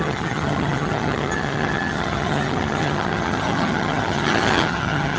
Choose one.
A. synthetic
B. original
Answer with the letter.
A